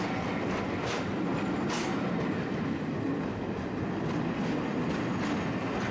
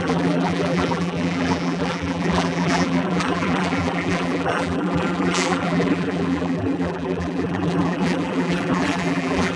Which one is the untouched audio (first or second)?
first